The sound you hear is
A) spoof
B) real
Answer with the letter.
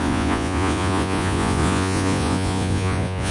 A